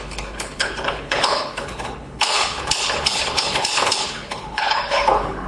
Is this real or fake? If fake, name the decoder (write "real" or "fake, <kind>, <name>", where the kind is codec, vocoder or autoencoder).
fake, codec, HILCodec